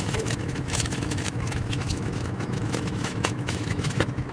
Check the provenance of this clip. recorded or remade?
remade